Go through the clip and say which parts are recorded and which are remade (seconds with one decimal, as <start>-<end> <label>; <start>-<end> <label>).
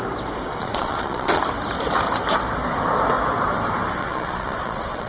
0.0-0.6 recorded; 0.6-1.4 remade; 1.4-4.0 recorded; 4.0-5.1 remade